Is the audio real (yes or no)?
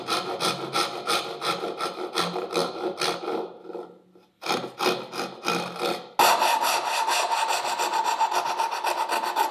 yes